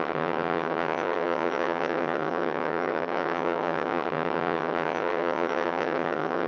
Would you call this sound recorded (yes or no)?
no